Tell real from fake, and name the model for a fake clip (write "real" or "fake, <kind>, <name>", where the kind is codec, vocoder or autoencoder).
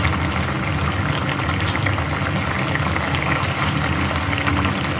real